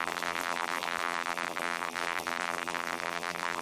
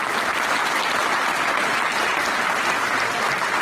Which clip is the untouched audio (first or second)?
second